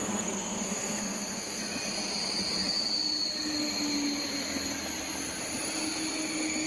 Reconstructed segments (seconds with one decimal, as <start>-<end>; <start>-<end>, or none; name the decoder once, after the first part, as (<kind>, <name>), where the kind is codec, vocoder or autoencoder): 0.0-1.6 (codec, SNAC)